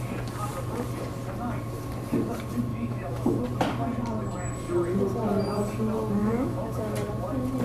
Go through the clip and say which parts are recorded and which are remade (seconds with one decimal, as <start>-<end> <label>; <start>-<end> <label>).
0.0-2.7 recorded; 2.7-3.4 remade; 3.4-6.2 recorded; 6.2-6.8 remade; 6.8-7.6 recorded